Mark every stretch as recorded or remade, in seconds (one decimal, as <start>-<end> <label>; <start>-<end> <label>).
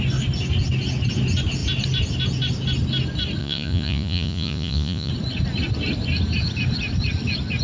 0.0-3.4 recorded; 3.4-5.1 remade; 5.1-7.6 recorded